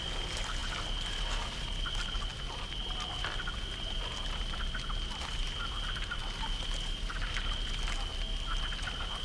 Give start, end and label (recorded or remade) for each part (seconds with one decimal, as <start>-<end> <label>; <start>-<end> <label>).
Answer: 0.0-9.2 recorded